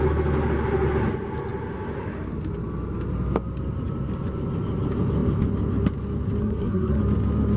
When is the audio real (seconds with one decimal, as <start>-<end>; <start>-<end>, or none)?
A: 0.0-6.4; 7.0-7.6